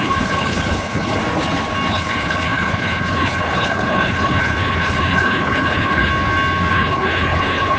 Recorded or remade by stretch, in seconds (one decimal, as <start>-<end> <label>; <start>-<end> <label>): 0.0-1.2 remade; 1.2-1.9 recorded; 1.9-6.1 remade; 6.1-6.7 recorded; 6.7-7.8 remade